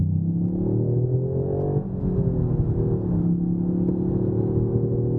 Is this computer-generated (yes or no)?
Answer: no